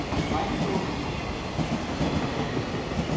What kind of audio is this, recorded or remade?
recorded